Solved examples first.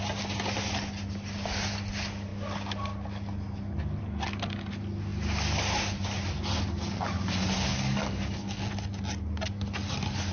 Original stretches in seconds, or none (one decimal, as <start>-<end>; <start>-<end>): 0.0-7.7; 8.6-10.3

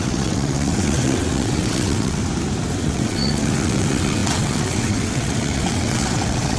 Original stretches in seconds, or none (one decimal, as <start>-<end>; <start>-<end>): 2.2-2.8

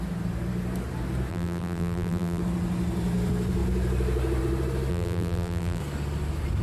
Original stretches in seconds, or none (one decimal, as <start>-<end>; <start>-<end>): 0.0-1.3; 2.4-4.9; 5.8-6.6

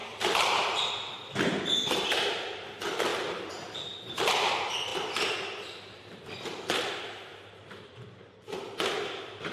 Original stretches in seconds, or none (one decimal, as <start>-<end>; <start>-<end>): none

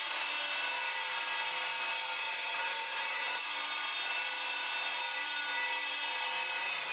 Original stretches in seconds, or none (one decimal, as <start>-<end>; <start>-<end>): 0.0-2.2; 3.4-6.9